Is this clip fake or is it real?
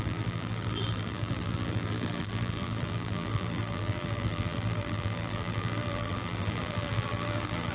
fake